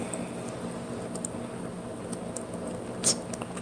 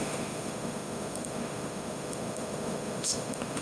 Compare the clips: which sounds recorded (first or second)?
first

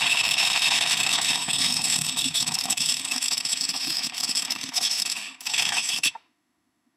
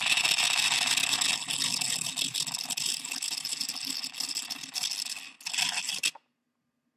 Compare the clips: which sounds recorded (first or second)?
second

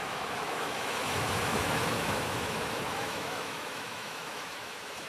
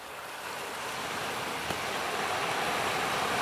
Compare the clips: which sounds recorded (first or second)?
second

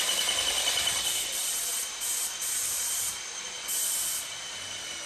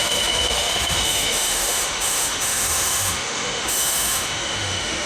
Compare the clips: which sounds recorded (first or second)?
first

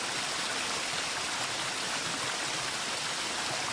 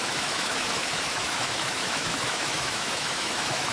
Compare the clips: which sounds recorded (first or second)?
first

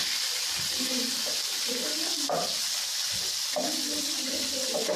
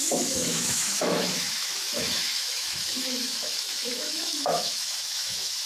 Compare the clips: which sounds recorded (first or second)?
first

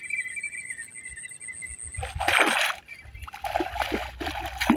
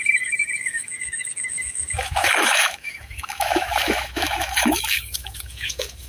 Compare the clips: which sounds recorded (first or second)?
first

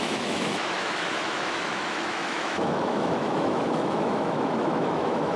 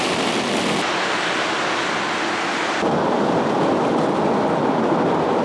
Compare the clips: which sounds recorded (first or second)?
second